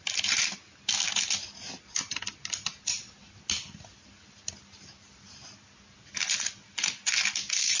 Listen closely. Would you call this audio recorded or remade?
recorded